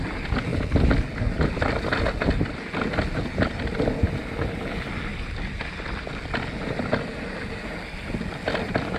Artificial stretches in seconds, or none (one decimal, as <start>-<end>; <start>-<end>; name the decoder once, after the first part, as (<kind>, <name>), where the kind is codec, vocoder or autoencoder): none